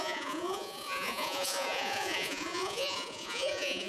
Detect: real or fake fake